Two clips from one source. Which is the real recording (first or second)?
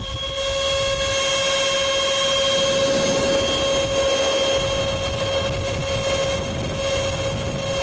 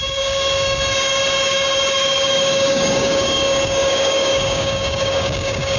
first